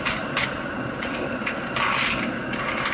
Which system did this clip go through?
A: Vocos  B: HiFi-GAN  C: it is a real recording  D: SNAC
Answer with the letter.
C